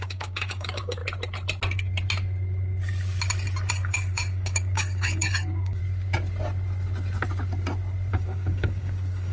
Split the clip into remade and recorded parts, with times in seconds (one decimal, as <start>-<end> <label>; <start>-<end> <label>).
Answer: 0.0-1.0 remade; 1.0-3.7 recorded; 3.7-5.8 remade; 5.8-8.1 recorded; 8.1-9.3 remade